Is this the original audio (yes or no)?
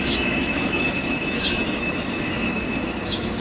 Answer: no